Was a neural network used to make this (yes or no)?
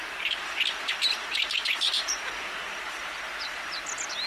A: yes